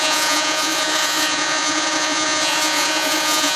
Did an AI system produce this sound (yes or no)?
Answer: yes